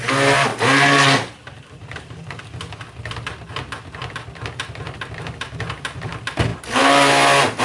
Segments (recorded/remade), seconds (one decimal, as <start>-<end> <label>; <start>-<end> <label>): 0.0-7.6 recorded